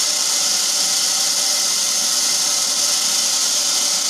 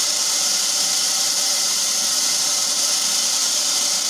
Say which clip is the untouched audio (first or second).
first